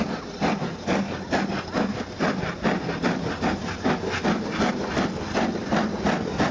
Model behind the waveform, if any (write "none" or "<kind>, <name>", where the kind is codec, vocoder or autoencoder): none